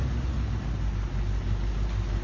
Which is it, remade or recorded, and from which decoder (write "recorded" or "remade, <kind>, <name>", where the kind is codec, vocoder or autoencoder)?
recorded